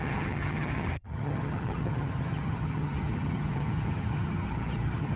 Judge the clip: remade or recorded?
remade